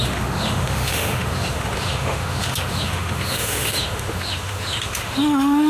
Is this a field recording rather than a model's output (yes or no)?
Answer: no